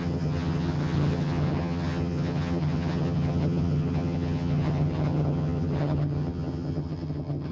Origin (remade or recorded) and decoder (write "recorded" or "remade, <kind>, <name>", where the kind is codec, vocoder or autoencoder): remade, vocoder, HiFi-GAN